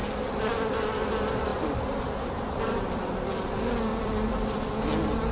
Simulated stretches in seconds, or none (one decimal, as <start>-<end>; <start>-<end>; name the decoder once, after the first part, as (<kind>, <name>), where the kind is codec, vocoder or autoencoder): 1.5-3.0 (vocoder, BigVGAN v2); 3.9-4.6